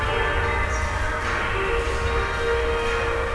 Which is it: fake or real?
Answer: real